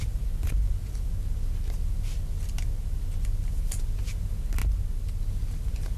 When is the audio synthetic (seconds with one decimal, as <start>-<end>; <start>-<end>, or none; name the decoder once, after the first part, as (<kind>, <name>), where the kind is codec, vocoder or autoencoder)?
none